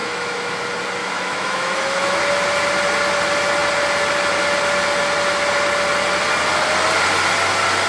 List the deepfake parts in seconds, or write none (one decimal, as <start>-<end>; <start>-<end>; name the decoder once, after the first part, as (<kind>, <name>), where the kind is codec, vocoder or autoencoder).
0.0-0.6 (autoencoder, DAC-VAE); 1.0-2.2